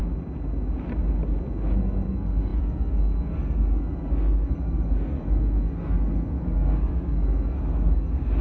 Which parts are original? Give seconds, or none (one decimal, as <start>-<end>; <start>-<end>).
0.0-1.8